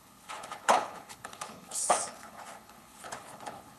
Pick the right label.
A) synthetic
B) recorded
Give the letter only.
A